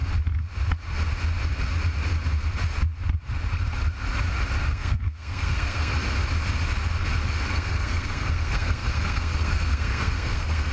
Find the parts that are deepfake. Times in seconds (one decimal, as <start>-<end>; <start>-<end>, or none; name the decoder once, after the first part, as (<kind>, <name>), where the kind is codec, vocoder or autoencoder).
4.7-5.9 (codec, SNAC); 7.5-10.7